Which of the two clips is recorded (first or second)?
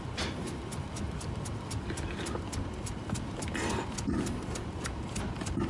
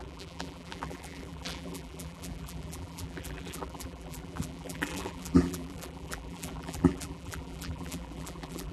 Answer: first